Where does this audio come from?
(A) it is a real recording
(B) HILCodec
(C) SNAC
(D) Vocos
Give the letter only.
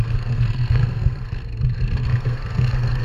C